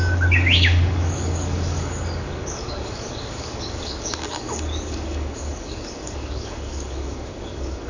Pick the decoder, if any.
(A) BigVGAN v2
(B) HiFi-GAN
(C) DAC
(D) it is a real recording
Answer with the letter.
C